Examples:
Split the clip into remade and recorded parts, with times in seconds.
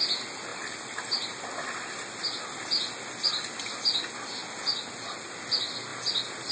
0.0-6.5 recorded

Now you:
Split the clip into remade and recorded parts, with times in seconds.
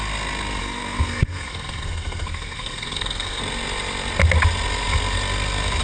0.0-0.6 recorded; 0.6-3.4 remade; 3.4-5.8 recorded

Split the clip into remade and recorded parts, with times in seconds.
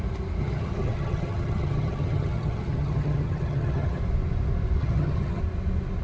0.0-0.4 recorded; 0.4-4.0 remade; 4.0-4.8 recorded; 4.8-5.4 remade; 5.4-6.0 recorded